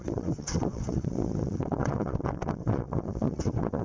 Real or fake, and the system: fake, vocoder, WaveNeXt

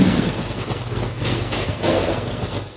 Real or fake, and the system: fake, codec, SNAC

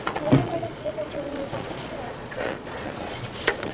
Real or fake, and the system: fake, vocoder, Vocos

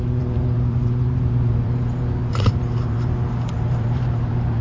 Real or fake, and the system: fake, vocoder, BigVGAN v2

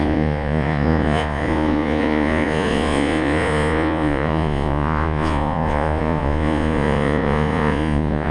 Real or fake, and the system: fake, vocoder, Vocos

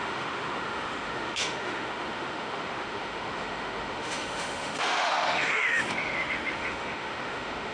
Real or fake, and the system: fake, autoencoder, DAC-VAE